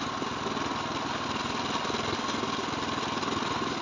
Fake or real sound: real